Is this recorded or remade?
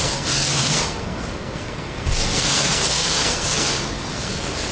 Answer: remade